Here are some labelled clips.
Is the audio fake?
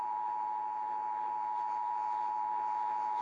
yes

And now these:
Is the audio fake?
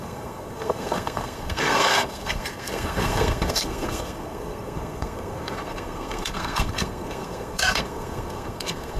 yes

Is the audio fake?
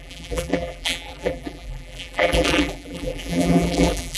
yes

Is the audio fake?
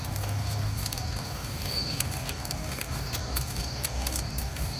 yes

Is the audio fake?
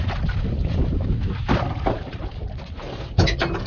no